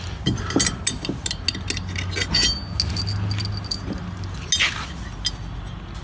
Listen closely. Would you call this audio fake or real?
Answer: real